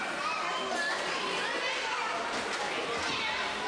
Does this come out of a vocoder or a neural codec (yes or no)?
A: no